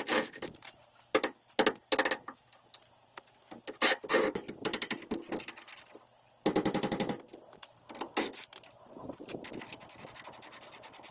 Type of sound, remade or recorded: recorded